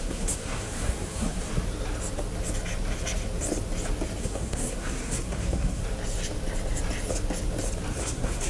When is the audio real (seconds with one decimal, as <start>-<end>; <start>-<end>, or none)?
1.5-4.2; 5.8-8.0